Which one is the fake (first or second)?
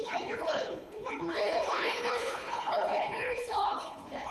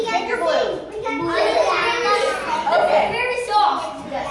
first